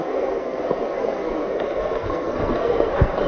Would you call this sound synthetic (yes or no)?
yes